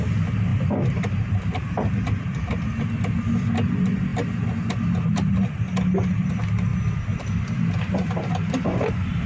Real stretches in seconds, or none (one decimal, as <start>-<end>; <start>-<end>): 0.0-9.3